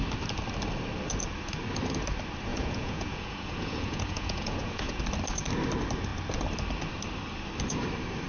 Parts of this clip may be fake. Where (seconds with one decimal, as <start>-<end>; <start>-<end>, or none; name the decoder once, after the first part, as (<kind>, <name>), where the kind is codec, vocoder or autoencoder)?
2.5-5.0 (vocoder, Vocos)

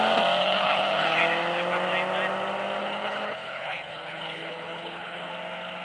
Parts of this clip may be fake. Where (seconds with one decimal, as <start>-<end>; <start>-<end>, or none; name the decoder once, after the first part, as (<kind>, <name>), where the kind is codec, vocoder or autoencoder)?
0.4-1.2 (codec, HILCodec); 2.8-5.3

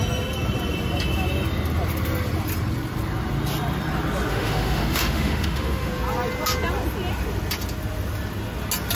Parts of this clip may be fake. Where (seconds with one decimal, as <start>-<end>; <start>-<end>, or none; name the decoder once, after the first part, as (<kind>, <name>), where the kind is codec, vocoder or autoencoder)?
4.3-5.9 (autoencoder, DAC-VAE)

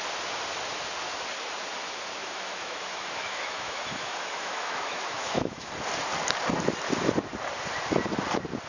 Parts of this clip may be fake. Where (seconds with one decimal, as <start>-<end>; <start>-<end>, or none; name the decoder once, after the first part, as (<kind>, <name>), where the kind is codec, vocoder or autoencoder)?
2.2-5.7 (autoencoder, DAC-VAE)

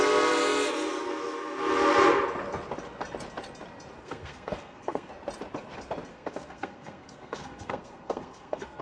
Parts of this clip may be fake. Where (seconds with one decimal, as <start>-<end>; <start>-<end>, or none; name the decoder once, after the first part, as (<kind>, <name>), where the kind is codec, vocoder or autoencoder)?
4.0-5.1 (codec, SNAC); 6.1-8.8

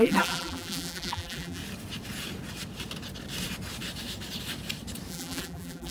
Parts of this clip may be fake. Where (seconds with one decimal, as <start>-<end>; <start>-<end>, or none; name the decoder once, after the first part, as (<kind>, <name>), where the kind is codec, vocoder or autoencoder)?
0.0-1.6 (vocoder, BigVGAN v2); 5.1-5.9